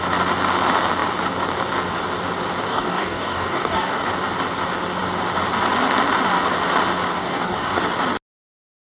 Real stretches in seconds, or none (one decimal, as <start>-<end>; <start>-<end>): 0.0-2.7; 4.0-7.1; 7.8-8.9